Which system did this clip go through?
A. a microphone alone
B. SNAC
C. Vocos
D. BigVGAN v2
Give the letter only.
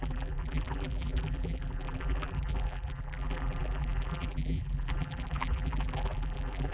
D